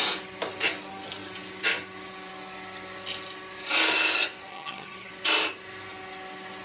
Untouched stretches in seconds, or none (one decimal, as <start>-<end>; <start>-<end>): 0.0-4.5; 5.1-6.6